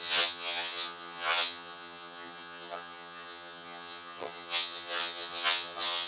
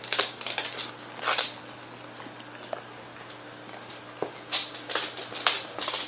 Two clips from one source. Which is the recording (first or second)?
second